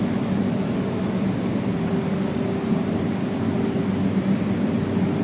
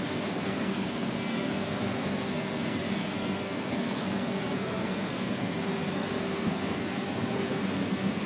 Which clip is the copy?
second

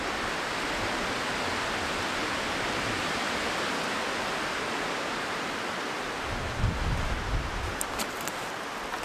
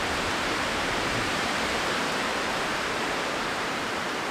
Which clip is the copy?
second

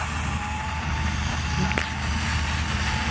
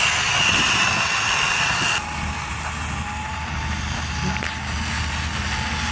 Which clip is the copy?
first